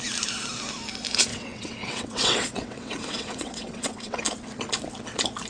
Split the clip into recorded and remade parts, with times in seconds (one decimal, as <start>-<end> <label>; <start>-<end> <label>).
0.0-1.3 recorded; 1.3-4.2 remade; 4.2-5.5 recorded